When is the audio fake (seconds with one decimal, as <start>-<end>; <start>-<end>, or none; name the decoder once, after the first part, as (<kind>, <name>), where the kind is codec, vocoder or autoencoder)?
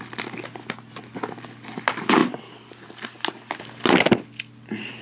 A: none